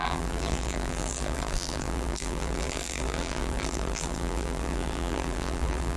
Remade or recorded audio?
remade